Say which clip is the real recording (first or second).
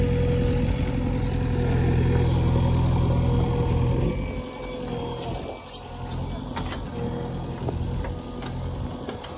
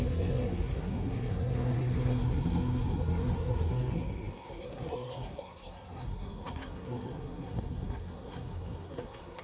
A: first